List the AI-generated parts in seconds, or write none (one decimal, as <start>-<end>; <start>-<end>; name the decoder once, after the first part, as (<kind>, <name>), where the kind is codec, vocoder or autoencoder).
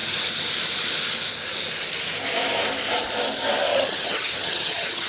3.7-5.1 (vocoder, HiFi-GAN)